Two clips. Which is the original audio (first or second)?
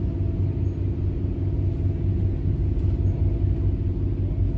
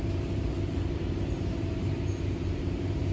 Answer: first